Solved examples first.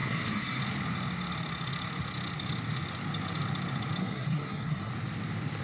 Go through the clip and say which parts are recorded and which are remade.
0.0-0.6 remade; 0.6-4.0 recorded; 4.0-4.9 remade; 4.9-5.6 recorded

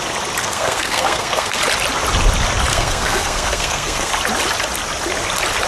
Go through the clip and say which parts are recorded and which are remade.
0.0-0.4 recorded; 0.4-1.6 remade; 1.6-2.7 recorded; 2.7-4.1 remade; 4.1-5.7 recorded

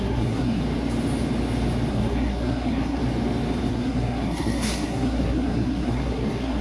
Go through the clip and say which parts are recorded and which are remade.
0.0-0.6 remade; 0.6-1.9 recorded; 1.9-3.0 remade; 3.0-3.7 recorded; 3.7-6.6 remade

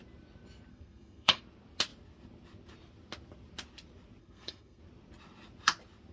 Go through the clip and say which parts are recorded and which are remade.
0.0-0.7 recorded; 0.7-1.4 remade; 1.4-4.2 recorded; 4.2-4.8 remade; 4.8-6.1 recorded

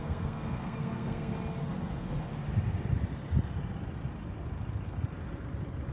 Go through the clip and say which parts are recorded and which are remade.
0.0-1.3 remade; 1.3-1.9 recorded; 1.9-2.3 remade; 2.3-5.9 recorded

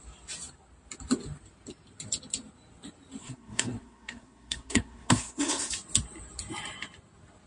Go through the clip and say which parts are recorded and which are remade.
0.0-3.2 recorded; 3.2-5.7 remade; 5.7-7.5 recorded

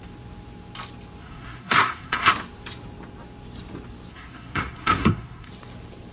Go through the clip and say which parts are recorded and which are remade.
0.0-1.2 recorded; 1.2-2.3 remade; 2.3-4.1 recorded; 4.1-5.5 remade; 5.5-6.1 recorded